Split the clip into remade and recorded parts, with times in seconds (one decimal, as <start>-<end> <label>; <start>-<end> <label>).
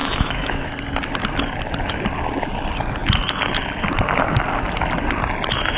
0.0-0.7 remade; 0.7-5.8 recorded